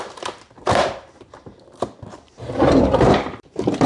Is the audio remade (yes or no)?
yes